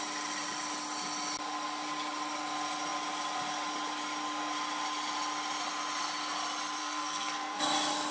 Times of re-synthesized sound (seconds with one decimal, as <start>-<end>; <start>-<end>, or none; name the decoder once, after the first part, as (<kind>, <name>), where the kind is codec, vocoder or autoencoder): 6.8-7.6 (codec, SNAC)